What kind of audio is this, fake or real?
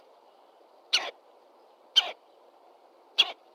real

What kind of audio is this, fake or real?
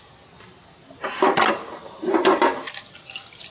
real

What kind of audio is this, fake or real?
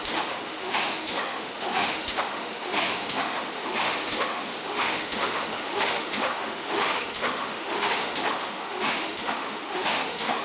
fake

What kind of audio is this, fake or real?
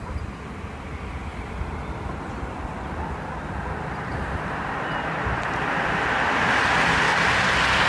real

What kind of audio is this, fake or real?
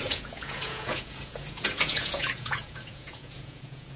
fake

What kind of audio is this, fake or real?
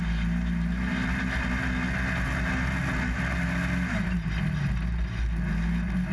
real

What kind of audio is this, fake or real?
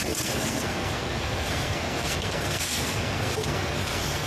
fake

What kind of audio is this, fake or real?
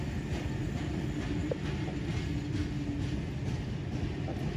real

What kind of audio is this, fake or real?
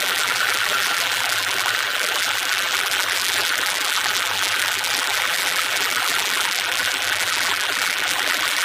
fake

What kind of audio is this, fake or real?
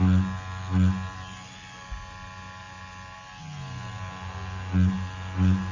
real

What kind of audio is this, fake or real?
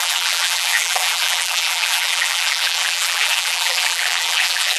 fake